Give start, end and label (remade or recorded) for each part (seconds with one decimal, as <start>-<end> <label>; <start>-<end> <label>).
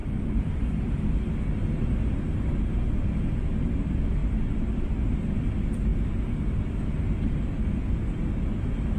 0.0-9.0 recorded